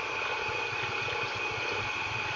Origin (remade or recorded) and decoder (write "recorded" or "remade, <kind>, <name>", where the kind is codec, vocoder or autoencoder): recorded